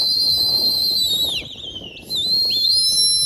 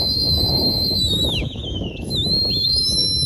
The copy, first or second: second